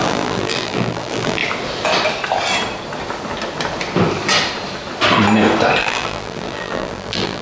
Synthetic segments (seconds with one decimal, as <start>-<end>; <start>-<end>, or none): 0.0-1.4; 5.8-7.4